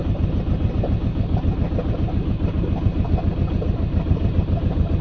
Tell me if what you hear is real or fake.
real